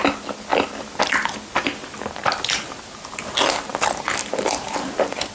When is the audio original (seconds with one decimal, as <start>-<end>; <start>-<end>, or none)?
0.0-5.3